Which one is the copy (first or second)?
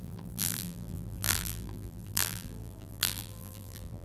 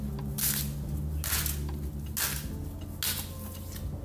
first